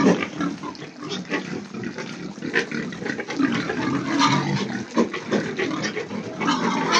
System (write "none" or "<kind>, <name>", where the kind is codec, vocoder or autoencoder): none